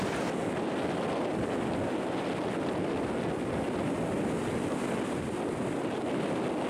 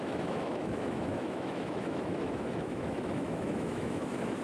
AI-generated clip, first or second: second